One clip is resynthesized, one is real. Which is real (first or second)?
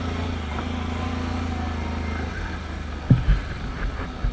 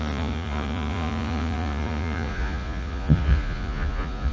first